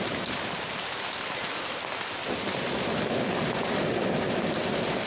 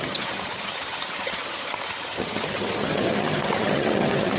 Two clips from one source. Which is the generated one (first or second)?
second